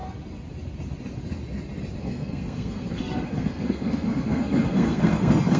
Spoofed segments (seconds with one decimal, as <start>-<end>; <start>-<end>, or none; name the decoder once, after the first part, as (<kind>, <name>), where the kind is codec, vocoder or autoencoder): 2.0-5.6 (codec, SNAC)